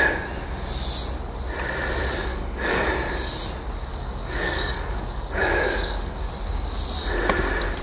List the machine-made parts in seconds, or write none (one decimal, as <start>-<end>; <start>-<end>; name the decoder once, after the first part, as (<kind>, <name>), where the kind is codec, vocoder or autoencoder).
2.3-2.9 (codec, DAC); 3.9-6.3